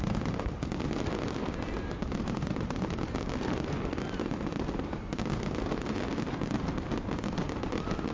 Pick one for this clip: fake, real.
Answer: real